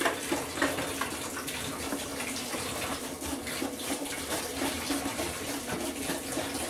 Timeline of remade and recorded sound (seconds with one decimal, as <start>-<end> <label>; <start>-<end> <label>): 0.0-6.7 recorded